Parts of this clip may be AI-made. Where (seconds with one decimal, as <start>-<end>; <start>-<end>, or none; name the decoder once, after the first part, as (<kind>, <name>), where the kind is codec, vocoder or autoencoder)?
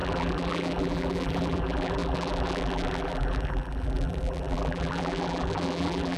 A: 0.0-6.2 (vocoder, BigVGAN v2)